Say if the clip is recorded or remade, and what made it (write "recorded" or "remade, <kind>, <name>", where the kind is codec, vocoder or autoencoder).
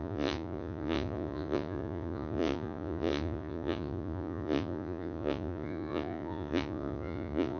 remade, vocoder, Vocos